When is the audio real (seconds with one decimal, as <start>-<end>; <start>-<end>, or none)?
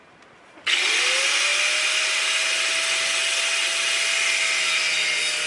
0.0-5.5